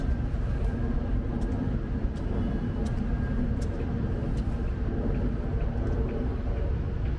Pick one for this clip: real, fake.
real